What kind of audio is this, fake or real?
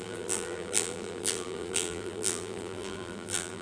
fake